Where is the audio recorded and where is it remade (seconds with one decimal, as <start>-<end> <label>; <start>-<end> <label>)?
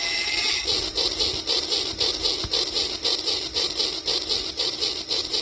0.0-5.4 recorded